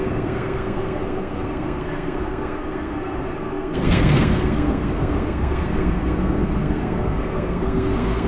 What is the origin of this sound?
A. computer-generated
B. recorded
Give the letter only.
A